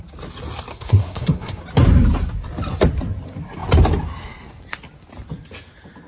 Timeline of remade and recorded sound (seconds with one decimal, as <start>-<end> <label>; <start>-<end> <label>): 0.0-0.7 recorded; 0.7-1.6 remade; 1.6-6.1 recorded